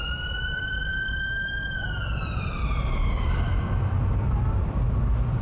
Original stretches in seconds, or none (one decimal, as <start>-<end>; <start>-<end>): none

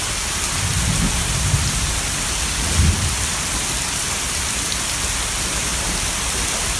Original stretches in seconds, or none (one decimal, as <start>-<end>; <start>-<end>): 0.0-6.8